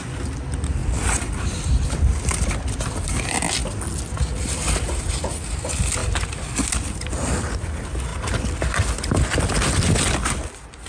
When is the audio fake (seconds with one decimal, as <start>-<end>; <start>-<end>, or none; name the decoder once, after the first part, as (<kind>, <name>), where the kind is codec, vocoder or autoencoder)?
none